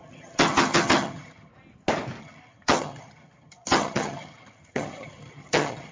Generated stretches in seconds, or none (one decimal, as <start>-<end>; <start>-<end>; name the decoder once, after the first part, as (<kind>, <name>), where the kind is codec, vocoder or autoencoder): 0.0-1.5 (vocoder, HiFi-GAN); 2.2-5.9